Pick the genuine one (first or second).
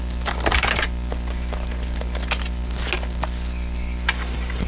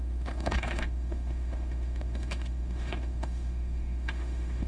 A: first